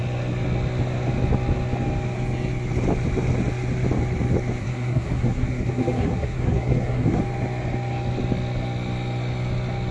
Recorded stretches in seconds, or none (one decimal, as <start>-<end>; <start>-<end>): 0.0-4.6; 7.2-9.9